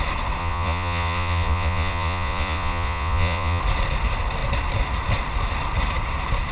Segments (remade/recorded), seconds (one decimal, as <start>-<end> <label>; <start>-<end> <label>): 0.0-0.4 recorded; 0.4-3.6 remade; 3.6-6.5 recorded